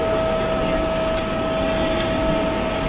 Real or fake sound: real